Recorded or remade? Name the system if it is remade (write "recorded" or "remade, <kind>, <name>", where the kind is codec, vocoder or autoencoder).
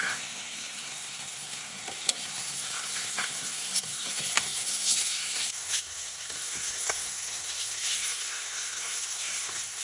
remade, codec, SNAC